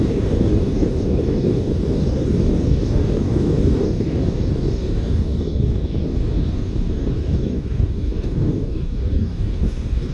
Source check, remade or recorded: remade